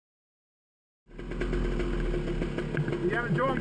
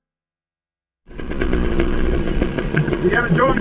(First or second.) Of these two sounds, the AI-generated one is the second